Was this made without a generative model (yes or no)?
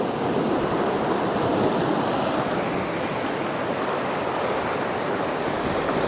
yes